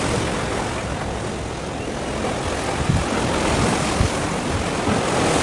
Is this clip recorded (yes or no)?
yes